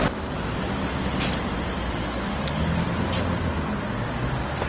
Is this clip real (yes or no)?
yes